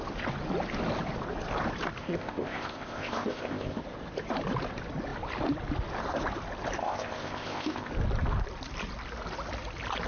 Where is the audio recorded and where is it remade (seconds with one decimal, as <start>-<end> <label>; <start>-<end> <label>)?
0.0-2.0 recorded; 2.0-3.8 remade; 3.8-6.8 recorded; 6.8-7.9 remade; 7.9-10.1 recorded